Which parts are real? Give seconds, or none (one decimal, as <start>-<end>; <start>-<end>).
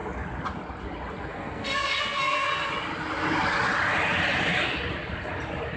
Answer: 0.0-1.2; 2.7-5.8